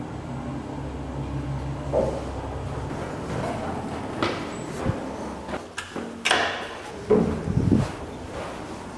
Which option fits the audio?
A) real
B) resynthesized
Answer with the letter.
A